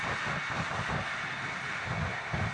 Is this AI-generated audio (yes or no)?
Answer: no